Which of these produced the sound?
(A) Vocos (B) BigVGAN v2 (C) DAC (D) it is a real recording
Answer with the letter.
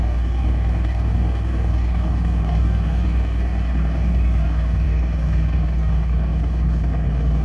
C